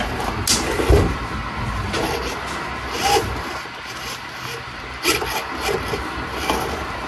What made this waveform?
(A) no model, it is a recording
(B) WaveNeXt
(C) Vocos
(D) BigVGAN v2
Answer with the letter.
A